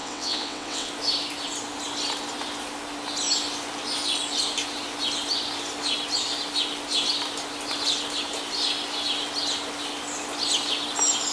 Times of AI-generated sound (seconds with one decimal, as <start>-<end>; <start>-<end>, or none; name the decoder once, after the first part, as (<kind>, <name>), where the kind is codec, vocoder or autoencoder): 0.0-0.9 (vocoder, WaveNeXt)